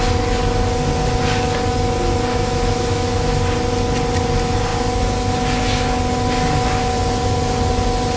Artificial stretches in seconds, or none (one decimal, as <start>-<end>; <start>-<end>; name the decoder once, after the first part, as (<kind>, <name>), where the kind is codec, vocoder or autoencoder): 2.3-3.3 (autoencoder, DAC-VAE)